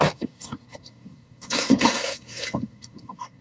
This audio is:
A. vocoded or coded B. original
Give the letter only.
A